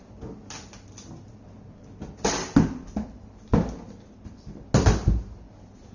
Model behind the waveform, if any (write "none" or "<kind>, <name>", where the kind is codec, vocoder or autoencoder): none